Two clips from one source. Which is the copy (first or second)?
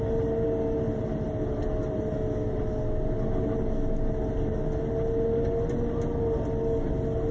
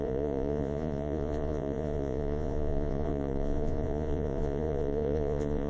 second